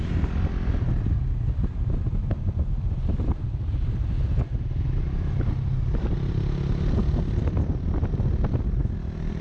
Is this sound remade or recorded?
recorded